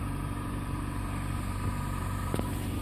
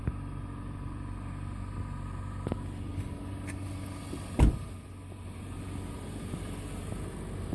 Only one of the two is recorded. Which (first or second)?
second